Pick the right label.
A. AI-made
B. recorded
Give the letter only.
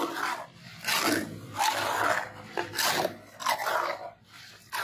B